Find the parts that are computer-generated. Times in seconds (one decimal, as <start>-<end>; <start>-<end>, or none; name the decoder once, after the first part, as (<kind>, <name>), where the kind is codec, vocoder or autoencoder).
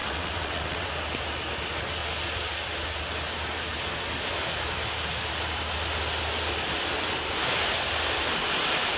0.0-0.9 (vocoder, WaveNeXt)